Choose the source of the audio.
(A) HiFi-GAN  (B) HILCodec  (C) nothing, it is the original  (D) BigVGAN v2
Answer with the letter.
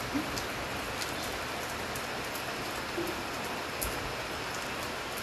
C